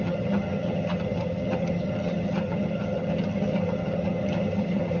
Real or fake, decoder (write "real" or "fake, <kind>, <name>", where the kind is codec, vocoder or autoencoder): fake, vocoder, HiFi-GAN